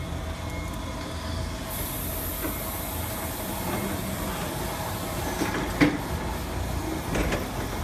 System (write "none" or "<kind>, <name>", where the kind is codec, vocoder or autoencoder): none